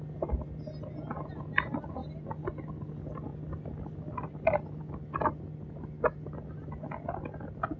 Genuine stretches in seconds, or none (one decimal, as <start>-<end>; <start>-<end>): 0.0-7.8